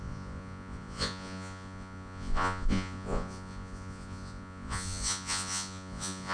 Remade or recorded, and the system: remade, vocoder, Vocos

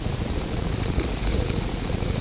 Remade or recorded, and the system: remade, vocoder, Vocos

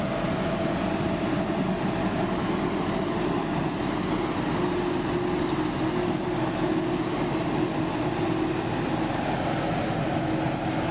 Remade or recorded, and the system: recorded